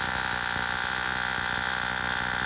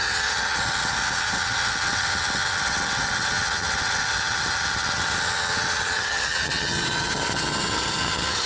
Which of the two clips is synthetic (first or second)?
second